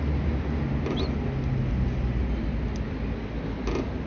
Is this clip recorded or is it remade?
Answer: recorded